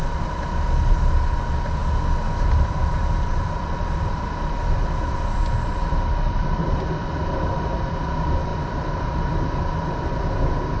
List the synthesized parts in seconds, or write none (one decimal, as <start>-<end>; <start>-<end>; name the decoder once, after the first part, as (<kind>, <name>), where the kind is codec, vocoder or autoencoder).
none